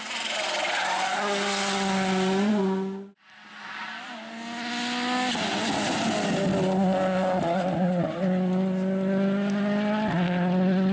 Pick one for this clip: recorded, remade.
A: recorded